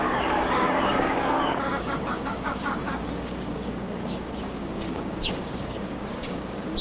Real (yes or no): no